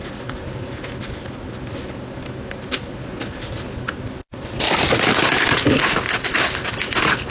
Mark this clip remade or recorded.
recorded